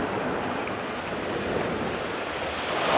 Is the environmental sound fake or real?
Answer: real